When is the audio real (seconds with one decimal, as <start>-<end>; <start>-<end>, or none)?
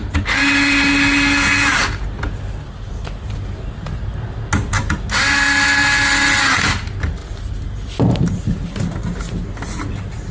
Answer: 0.0-10.3